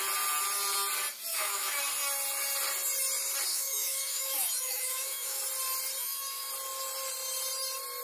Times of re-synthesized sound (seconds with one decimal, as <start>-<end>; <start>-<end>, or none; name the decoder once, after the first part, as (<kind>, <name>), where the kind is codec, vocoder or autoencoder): 1.3-1.8 (autoencoder, DAC-VAE); 3.5-5.4; 6.0-6.5